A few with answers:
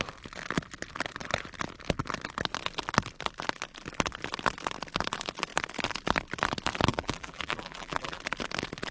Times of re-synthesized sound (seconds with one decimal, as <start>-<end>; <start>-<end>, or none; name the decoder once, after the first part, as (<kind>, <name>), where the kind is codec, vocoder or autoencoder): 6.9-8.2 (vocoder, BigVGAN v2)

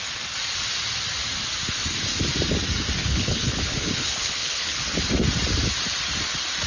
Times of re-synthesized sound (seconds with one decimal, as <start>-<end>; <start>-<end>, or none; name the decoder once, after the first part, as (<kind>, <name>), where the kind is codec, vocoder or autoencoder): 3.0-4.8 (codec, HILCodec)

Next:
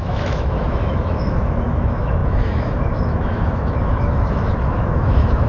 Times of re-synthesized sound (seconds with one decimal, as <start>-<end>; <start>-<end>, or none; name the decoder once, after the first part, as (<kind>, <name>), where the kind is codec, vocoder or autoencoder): 0.0-5.5 (autoencoder, DAC-VAE)

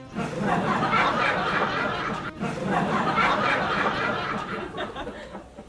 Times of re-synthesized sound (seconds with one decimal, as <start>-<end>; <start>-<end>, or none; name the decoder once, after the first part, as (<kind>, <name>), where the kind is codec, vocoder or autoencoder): 1.1-4.5 (vocoder, BigVGAN v2)